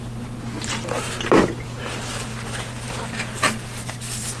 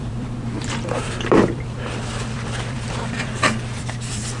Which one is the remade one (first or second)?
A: second